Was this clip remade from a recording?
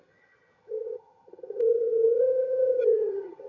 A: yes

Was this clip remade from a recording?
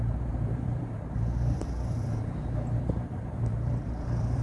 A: yes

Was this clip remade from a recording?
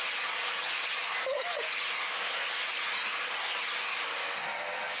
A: no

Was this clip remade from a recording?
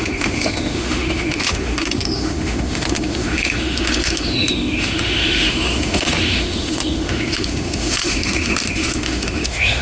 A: yes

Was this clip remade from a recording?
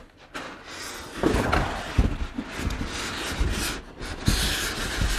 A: no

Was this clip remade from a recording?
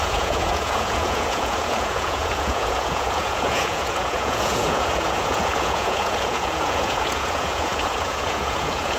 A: yes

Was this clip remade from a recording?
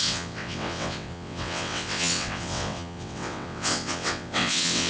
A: yes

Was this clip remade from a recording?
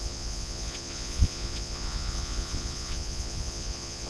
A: yes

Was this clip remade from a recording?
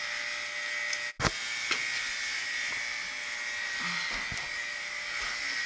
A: no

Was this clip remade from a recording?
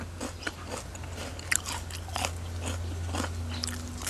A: no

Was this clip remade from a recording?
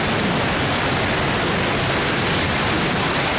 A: no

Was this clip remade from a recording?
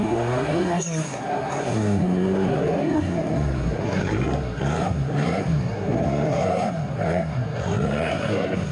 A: yes